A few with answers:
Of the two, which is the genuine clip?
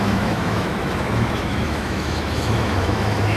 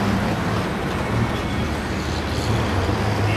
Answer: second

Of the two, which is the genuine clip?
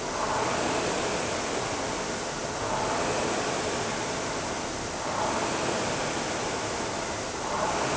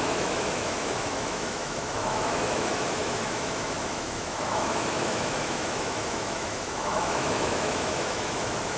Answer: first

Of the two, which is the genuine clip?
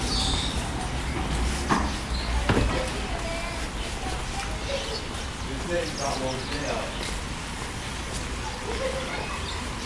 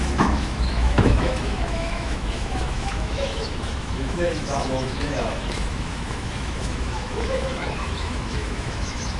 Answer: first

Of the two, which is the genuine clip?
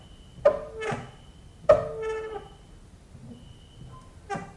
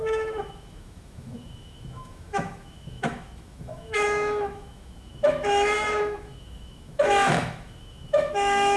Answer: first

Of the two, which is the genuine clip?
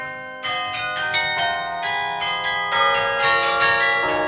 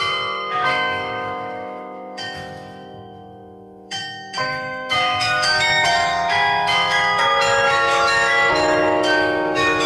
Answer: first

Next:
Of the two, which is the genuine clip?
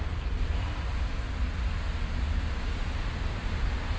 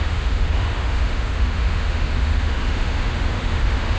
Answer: first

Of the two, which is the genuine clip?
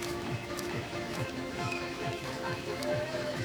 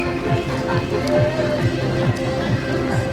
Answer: second